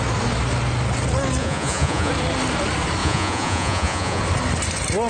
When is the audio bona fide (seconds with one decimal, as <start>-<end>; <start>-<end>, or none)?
0.0-1.4; 2.1-3.0; 4.2-5.1